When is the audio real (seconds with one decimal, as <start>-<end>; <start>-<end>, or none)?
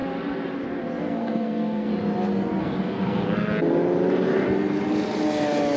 0.0-1.0; 1.9-2.6; 3.5-5.8